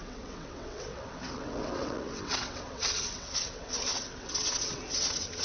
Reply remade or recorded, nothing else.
remade